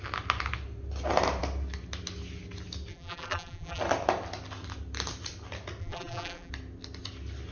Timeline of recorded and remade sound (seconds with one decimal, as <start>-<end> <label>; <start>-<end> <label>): 0.0-2.9 recorded; 2.9-3.8 remade; 3.8-5.8 recorded; 5.8-6.5 remade; 6.5-7.5 recorded